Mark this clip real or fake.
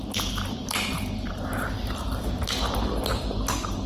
fake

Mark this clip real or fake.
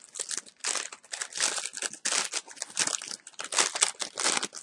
real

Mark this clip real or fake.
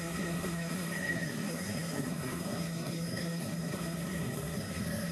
fake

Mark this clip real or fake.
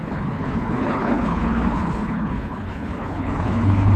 fake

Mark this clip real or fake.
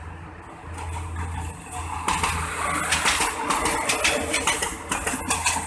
real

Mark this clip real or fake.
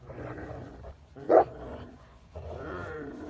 fake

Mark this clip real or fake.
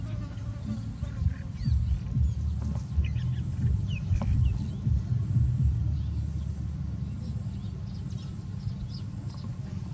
real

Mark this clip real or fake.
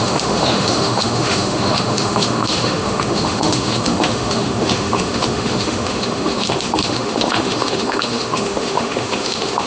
fake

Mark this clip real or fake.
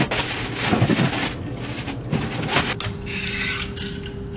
real